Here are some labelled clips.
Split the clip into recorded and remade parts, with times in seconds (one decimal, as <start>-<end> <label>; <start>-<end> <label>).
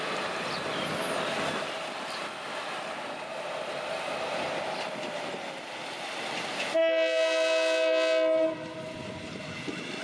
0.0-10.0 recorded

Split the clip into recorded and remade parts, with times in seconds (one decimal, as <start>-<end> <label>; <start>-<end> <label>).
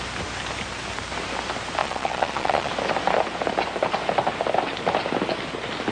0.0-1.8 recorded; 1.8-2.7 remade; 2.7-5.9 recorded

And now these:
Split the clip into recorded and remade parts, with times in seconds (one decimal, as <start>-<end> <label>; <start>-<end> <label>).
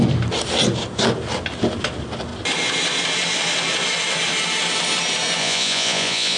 0.0-5.4 recorded; 5.4-6.4 remade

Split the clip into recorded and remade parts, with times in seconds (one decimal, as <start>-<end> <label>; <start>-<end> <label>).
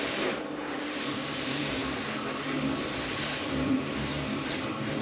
0.0-1.8 remade; 1.8-5.0 recorded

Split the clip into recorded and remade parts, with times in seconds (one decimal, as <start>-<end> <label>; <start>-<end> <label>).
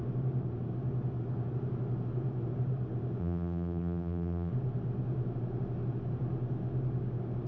0.0-3.2 recorded; 3.2-4.5 remade; 4.5-7.5 recorded